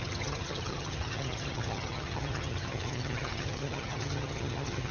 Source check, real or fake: fake